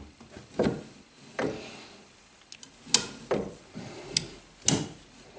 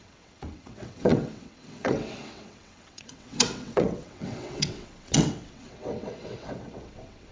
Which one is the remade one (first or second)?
second